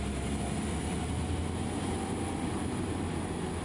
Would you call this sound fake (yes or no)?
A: no